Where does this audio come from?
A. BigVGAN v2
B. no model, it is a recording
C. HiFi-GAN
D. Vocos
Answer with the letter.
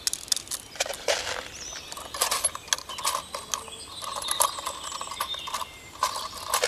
B